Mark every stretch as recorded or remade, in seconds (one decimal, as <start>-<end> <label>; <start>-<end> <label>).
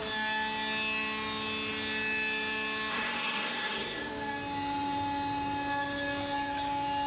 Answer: 0.0-2.9 recorded; 2.9-4.1 remade; 4.1-7.1 recorded